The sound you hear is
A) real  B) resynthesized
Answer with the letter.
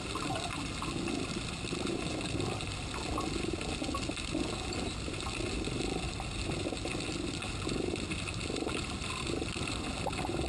A